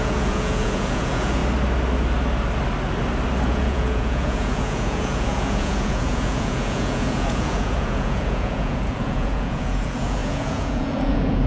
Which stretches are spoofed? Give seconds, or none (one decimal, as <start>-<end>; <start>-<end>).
0.0-1.4; 3.5-11.5